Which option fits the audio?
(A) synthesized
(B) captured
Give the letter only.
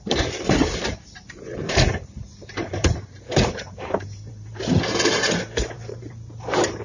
A